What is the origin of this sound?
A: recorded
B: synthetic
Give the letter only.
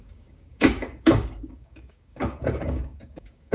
B